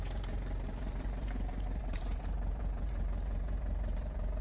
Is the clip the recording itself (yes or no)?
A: no